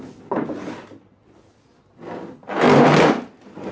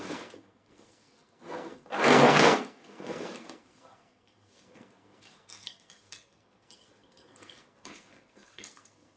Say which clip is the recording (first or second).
first